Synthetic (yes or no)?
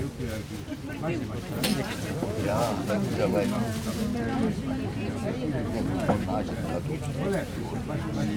no